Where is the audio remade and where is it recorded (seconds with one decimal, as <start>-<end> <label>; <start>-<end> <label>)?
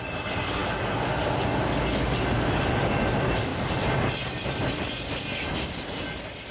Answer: 0.0-6.5 recorded